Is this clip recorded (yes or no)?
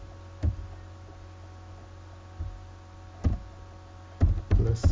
yes